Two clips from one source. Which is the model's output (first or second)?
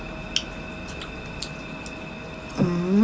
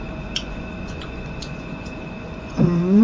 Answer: second